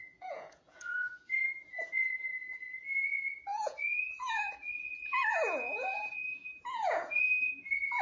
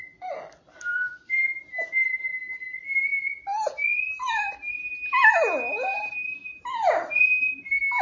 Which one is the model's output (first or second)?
first